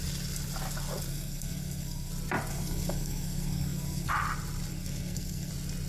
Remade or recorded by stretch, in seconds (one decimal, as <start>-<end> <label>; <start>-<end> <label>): 0.0-1.1 recorded; 1.1-2.1 remade; 2.1-2.5 recorded; 2.5-4.1 remade; 4.1-4.7 recorded; 4.7-5.5 remade; 5.5-5.9 recorded